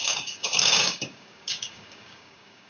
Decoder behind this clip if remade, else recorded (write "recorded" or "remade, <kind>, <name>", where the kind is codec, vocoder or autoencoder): remade, codec, DAC